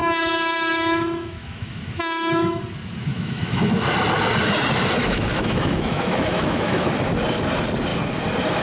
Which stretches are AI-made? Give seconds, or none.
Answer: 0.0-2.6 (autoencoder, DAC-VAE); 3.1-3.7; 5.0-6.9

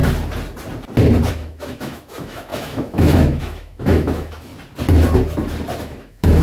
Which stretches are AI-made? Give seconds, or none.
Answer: 1.3-4.5 (autoencoder, DAC-VAE); 5.8-6.4

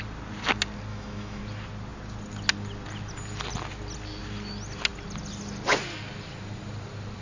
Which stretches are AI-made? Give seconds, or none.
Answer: 0.9-1.4 (autoencoder, DAC-VAE)

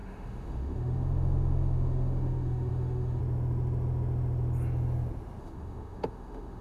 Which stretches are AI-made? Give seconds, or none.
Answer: 0.0-3.2 (autoencoder, DAC-VAE); 5.4-6.6